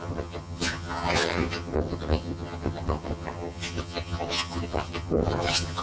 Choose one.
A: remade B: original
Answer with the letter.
A